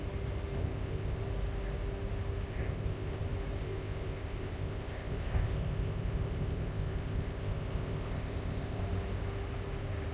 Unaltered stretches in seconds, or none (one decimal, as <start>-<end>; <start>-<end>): 0.0-0.6; 1.2-2.5; 3.2-3.6; 8.8-10.1